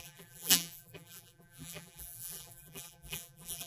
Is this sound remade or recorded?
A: remade